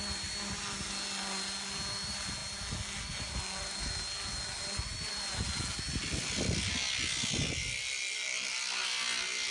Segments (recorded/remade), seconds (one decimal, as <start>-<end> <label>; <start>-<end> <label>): 0.0-9.5 recorded